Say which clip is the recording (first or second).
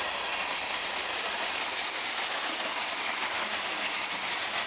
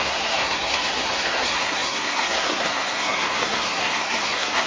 first